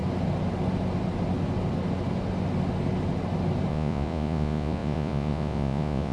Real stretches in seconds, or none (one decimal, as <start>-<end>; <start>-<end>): 0.0-3.7